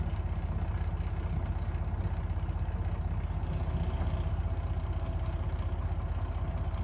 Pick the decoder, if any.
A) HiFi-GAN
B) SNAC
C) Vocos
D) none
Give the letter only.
D